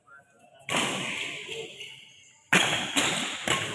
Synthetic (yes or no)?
no